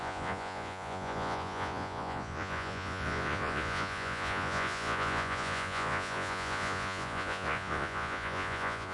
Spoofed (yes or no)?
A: yes